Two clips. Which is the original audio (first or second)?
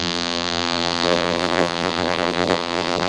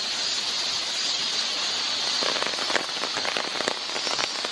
second